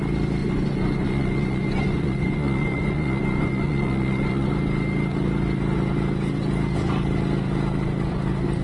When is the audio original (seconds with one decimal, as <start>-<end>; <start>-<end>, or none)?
0.0-0.4; 4.5-8.6